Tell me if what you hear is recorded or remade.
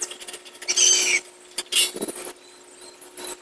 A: recorded